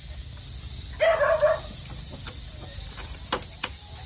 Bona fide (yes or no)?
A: yes